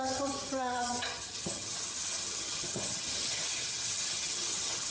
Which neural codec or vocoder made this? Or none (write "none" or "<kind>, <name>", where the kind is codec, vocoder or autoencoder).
vocoder, HiFi-GAN